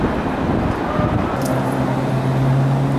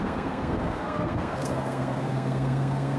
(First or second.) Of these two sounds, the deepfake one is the second